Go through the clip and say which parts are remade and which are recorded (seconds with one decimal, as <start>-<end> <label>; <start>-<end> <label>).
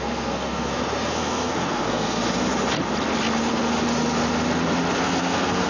0.0-2.2 remade; 2.2-5.0 recorded; 5.0-5.7 remade